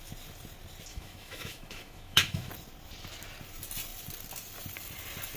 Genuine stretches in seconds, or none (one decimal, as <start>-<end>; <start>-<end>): 0.0-0.9; 2.5-5.4